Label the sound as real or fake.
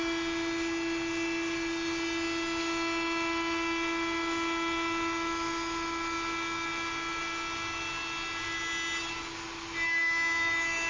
real